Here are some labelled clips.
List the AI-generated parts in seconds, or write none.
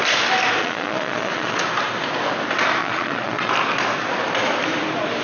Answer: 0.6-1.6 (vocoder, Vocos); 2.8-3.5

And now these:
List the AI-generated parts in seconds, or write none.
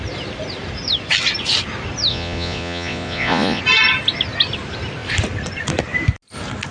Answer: 2.1-3.6 (vocoder, Vocos)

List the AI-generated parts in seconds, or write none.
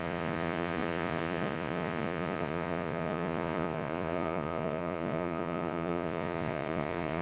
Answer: 0.0-7.2 (vocoder, Vocos)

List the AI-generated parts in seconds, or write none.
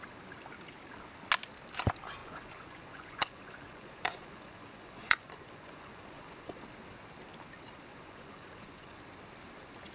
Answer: 2.2-6.6 (vocoder, Vocos); 7.9-9.0